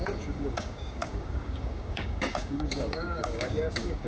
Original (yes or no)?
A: no